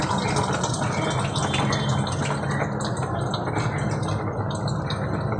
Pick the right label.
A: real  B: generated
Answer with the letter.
A